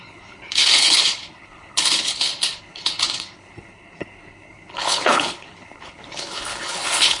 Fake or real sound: fake